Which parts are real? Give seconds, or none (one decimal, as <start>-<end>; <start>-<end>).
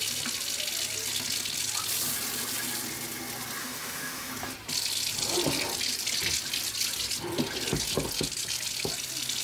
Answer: 0.0-3.6; 4.3-9.4